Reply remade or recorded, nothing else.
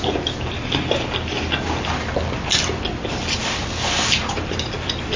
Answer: recorded